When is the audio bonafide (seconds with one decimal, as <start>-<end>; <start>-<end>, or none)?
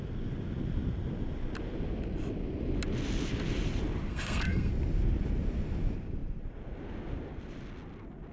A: 0.0-4.1; 4.7-8.3